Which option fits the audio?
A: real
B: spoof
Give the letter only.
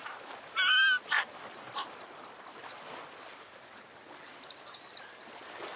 A